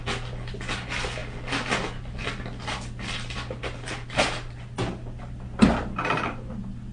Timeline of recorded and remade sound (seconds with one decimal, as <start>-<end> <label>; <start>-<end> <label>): 0.0-6.9 recorded